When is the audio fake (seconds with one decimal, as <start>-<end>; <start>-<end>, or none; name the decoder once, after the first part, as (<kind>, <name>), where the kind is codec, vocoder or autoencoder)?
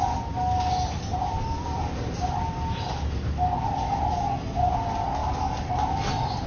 none